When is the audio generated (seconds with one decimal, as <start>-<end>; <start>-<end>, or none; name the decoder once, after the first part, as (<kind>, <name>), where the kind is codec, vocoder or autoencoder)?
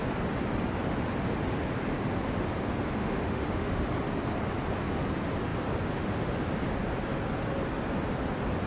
3.0-3.8 (autoencoder, DAC-VAE)